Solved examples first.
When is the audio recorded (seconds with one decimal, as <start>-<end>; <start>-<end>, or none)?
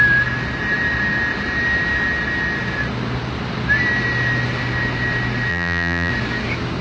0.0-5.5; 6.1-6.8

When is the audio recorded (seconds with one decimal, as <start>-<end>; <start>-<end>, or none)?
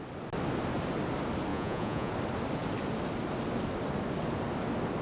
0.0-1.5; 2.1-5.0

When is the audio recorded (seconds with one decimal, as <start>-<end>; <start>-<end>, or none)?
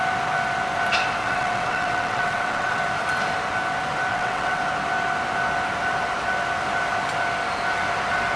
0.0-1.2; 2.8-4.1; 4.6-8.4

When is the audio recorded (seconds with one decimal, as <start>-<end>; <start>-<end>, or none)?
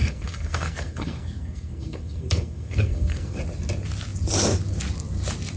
3.4-5.6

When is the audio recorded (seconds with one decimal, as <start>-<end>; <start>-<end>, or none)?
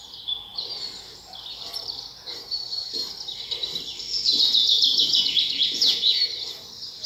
0.0-4.3; 6.2-7.1